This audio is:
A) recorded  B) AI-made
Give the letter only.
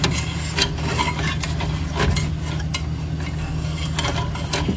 A